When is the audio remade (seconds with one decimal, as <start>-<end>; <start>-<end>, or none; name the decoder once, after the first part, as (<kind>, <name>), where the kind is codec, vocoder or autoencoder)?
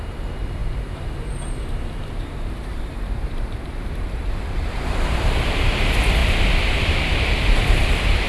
0.0-6.2 (vocoder, BigVGAN v2); 6.8-8.3